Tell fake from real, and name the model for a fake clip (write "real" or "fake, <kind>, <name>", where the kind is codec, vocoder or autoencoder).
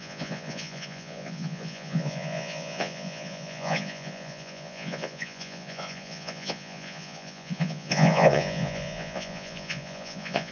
fake, vocoder, Vocos